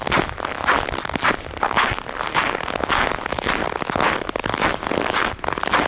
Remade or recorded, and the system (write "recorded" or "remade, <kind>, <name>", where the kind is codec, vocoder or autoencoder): recorded